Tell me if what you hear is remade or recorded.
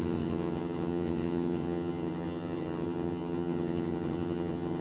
remade